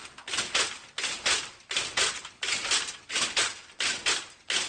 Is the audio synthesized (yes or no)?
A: no